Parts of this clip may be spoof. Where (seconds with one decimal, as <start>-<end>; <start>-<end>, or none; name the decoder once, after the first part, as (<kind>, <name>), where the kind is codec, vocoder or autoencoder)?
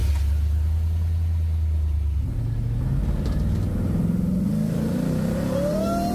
3.7-6.1 (vocoder, BigVGAN v2)